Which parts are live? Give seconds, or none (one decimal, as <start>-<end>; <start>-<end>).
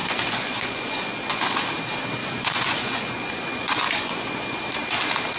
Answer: 1.7-2.2; 4.6-5.4